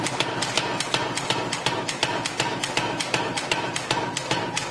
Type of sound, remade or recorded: recorded